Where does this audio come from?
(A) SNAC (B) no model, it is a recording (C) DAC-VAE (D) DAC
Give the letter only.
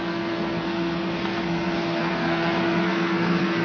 A